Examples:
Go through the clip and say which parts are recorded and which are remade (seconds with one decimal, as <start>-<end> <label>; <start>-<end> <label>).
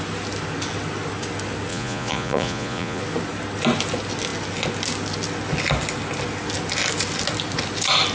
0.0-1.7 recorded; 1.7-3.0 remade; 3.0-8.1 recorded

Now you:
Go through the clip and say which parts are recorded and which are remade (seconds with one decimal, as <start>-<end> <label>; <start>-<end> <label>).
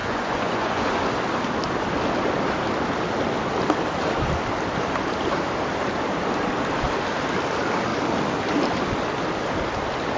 0.0-1.0 remade; 1.0-10.2 recorded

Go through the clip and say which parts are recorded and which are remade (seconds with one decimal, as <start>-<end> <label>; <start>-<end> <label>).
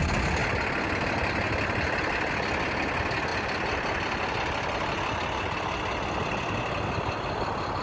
0.0-7.8 recorded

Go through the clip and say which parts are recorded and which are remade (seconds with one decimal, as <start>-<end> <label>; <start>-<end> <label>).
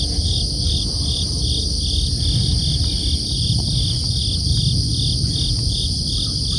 0.0-6.6 recorded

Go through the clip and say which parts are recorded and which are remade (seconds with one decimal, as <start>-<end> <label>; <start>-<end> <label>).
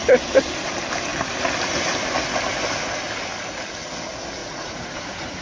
0.0-4.4 recorded; 4.4-5.4 remade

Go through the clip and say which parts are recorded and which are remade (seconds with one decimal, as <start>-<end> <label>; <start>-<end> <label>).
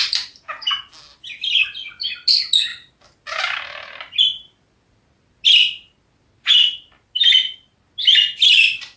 0.0-9.0 recorded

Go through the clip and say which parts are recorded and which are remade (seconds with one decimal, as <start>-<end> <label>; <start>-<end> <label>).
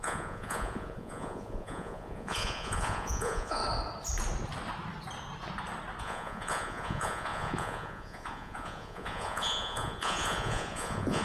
0.0-3.6 remade; 3.6-6.0 recorded; 6.0-11.2 remade